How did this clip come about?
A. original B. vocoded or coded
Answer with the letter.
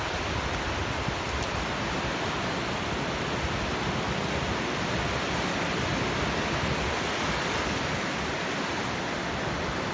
A